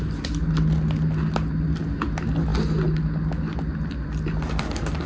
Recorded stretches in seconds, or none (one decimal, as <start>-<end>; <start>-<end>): 0.0-5.1